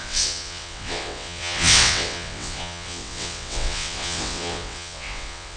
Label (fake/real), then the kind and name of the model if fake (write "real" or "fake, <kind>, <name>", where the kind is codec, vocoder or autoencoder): fake, vocoder, WaveNeXt